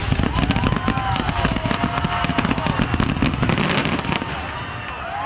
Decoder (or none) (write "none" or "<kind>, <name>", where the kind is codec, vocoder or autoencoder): none